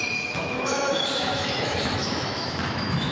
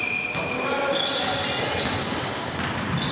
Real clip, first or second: second